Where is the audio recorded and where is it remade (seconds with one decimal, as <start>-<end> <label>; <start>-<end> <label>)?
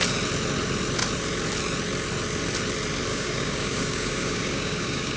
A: 0.0-3.1 recorded; 3.1-5.2 remade